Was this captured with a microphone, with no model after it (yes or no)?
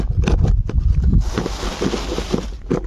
yes